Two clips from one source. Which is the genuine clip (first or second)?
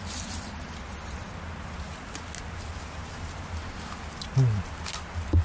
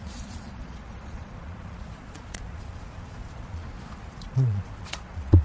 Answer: first